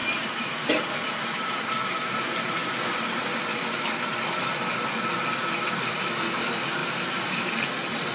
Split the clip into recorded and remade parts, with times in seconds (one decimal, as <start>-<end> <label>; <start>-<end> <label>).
0.0-1.7 remade; 1.7-6.8 recorded; 6.8-7.5 remade; 7.5-8.1 recorded